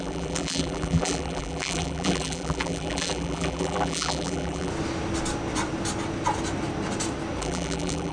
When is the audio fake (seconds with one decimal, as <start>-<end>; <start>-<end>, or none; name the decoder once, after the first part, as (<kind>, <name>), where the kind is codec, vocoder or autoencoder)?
0.0-4.7 (vocoder, BigVGAN v2); 7.4-8.1